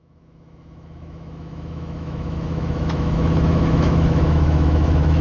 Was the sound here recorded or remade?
remade